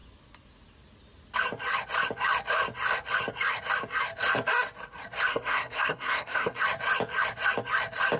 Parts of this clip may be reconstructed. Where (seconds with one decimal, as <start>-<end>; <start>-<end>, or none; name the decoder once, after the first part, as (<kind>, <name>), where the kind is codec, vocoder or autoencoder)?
5.3-6.6 (codec, SNAC)